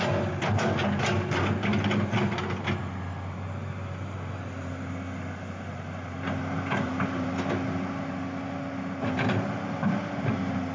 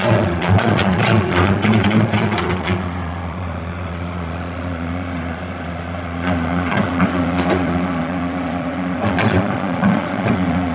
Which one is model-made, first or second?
second